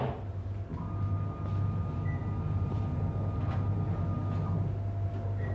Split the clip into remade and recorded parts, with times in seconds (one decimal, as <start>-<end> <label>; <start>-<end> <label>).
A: 0.0-5.5 recorded